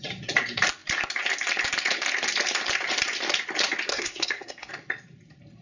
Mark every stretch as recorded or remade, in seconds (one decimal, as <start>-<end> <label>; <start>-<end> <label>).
0.0-3.9 recorded; 3.9-4.7 remade; 4.7-5.6 recorded

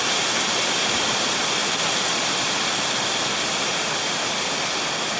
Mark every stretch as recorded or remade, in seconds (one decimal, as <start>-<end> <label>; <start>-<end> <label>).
0.0-1.6 recorded; 1.6-3.6 remade; 3.6-5.2 recorded

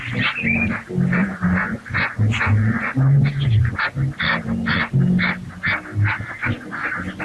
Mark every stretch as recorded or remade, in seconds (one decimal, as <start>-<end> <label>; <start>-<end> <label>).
0.0-1.2 recorded; 1.2-3.8 remade; 3.8-6.4 recorded; 6.4-7.2 remade